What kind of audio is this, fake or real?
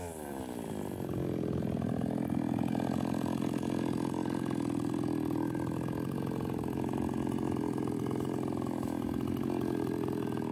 real